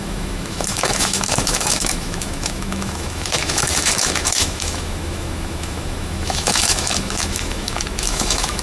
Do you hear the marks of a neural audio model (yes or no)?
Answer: yes